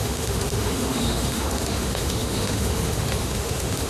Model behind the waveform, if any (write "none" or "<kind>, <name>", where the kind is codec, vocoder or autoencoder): autoencoder, DAC-VAE